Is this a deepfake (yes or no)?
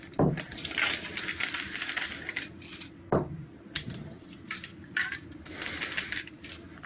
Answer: yes